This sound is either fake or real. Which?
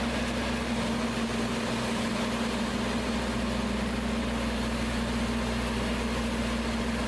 real